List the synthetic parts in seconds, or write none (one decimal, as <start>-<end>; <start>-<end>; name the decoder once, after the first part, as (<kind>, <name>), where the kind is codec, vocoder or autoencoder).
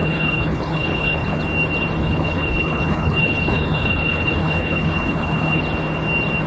0.0-1.4 (codec, HILCodec); 2.0-5.6